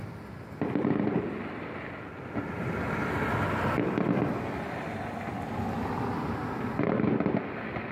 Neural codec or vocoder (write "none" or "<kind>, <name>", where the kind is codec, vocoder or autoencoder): none